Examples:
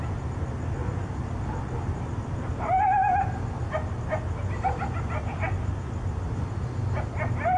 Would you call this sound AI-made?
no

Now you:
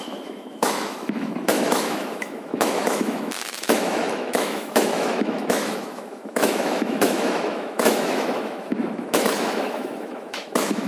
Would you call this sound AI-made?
yes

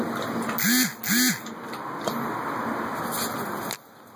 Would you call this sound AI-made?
no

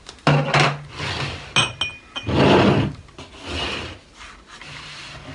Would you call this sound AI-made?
no